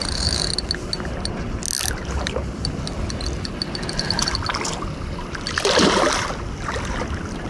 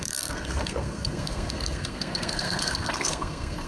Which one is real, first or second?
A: first